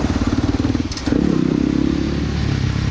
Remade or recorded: recorded